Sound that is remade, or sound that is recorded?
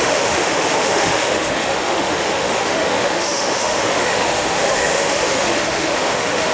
remade